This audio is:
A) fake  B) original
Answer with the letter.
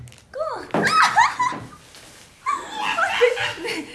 B